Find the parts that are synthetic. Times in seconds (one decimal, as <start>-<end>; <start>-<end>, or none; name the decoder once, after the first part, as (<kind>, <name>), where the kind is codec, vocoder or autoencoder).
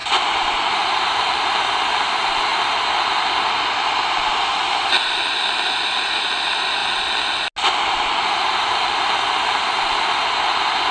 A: none